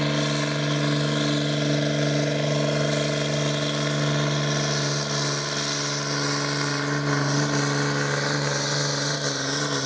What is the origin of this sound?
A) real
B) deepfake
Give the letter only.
A